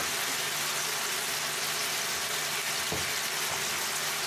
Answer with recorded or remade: recorded